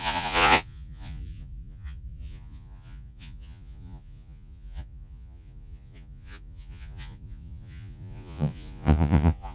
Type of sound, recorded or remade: remade